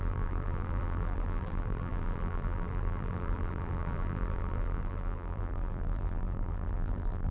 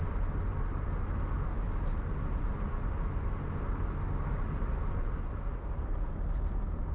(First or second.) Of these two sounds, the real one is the second